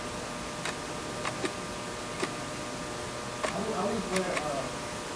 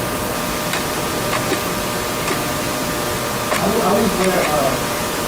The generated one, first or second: second